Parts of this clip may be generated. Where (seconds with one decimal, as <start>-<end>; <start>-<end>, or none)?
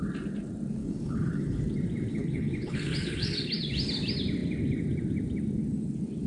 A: 0.8-1.6; 2.1-3.5